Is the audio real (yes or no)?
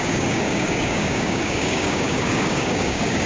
no